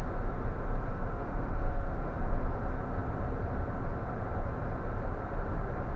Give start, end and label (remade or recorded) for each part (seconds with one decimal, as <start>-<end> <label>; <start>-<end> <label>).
0.0-0.9 recorded; 0.9-2.2 remade; 2.2-6.0 recorded